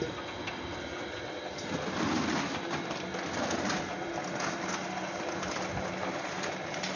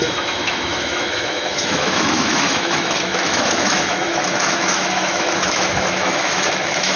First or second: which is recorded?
first